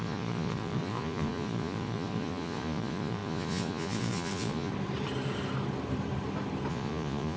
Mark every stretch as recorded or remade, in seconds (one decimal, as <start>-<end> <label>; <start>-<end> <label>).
0.0-4.7 remade; 4.7-6.7 recorded; 6.7-7.4 remade